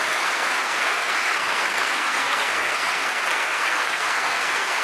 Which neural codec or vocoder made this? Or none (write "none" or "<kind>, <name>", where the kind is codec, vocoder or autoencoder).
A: codec, SNAC